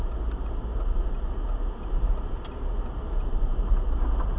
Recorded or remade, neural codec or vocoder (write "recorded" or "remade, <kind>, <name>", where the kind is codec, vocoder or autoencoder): recorded